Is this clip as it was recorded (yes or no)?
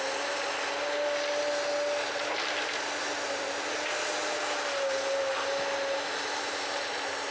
yes